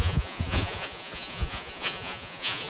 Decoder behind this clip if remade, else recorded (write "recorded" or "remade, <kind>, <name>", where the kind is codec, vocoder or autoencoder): remade, vocoder, Vocos